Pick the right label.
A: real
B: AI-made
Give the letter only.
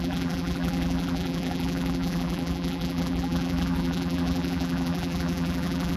B